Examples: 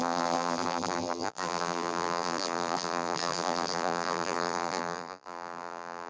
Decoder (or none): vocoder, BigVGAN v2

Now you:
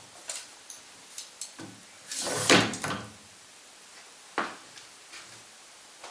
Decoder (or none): none